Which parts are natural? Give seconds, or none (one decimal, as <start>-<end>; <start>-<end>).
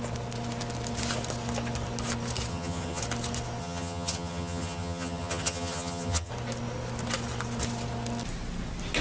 0.0-2.5; 3.0-3.6; 6.3-9.0